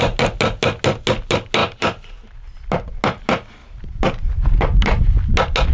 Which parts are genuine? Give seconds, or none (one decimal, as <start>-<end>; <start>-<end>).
0.0-1.6; 3.0-3.6; 5.0-5.7